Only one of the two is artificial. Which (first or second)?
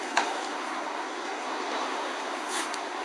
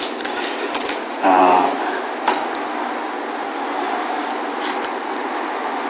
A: first